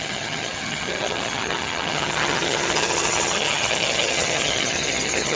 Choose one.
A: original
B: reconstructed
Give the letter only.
B